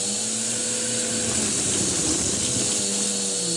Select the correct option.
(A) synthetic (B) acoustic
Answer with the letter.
B